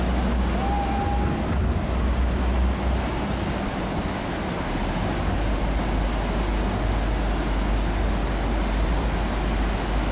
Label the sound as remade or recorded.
recorded